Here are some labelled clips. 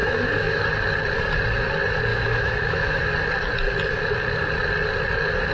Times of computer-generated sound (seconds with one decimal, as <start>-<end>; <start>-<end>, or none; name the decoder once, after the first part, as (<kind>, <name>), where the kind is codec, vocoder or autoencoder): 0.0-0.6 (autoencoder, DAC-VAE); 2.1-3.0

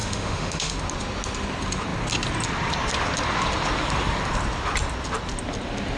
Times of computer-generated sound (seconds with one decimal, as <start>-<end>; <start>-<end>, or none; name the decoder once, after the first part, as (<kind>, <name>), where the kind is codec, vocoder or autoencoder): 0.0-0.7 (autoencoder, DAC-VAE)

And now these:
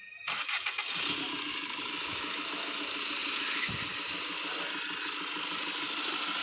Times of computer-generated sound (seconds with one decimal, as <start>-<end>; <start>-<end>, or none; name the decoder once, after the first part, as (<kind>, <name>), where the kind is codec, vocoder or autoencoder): 1.5-2.8 (autoencoder, DAC-VAE)

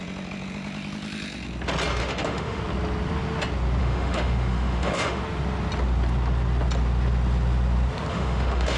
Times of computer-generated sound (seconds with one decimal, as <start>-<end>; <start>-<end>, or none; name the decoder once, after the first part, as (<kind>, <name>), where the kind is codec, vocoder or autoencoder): 2.0-2.6 (autoencoder, DAC-VAE); 3.8-5.2; 8.1-8.8